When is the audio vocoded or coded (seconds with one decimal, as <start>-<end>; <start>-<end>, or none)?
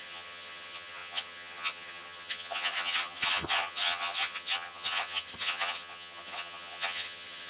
0.0-7.5